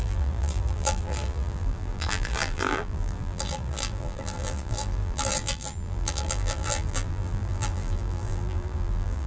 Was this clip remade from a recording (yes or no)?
yes